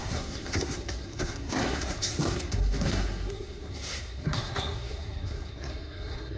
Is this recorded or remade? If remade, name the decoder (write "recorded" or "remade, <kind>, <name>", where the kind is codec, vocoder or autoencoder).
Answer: remade, codec, SNAC